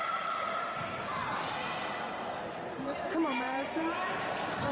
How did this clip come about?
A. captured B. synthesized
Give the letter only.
B